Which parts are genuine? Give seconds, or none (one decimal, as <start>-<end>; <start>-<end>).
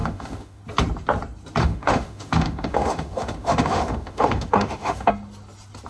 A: 0.6-1.6; 5.1-5.9